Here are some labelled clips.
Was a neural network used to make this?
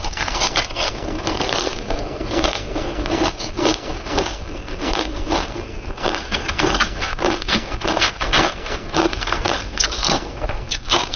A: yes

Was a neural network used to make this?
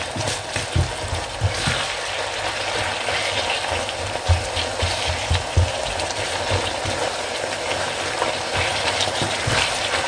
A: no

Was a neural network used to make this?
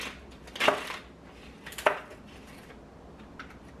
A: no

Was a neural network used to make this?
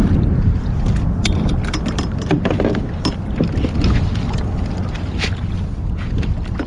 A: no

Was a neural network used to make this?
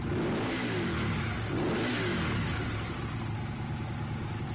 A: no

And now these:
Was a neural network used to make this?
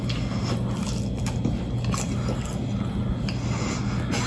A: no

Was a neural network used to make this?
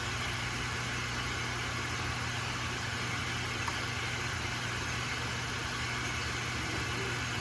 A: no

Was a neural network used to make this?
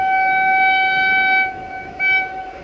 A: yes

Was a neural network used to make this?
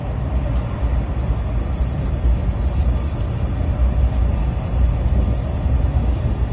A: no